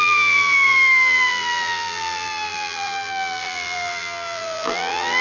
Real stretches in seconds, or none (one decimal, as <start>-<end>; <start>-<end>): none